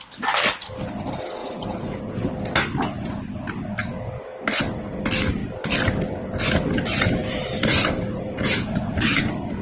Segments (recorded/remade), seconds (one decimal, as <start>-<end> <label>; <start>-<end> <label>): 0.0-1.4 recorded; 1.4-2.3 remade; 2.3-7.2 recorded; 7.2-9.6 remade